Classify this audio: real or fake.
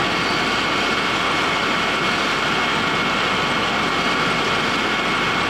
real